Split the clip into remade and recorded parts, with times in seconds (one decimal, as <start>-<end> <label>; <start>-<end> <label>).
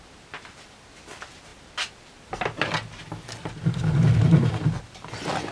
0.0-5.5 recorded